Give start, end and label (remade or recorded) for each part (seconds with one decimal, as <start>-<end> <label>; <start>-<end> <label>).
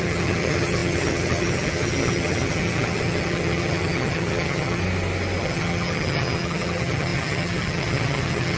0.0-4.8 remade; 4.8-5.4 recorded; 5.4-8.6 remade